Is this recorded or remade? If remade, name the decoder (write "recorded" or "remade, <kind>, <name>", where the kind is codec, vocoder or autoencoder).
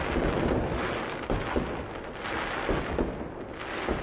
recorded